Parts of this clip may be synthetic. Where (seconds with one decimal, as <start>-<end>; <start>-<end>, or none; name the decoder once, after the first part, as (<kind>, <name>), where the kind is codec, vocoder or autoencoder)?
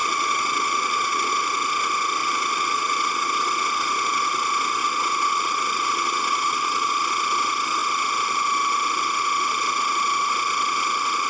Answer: 0.0-1.3 (vocoder, Vocos); 2.2-3.3; 4.8-7.1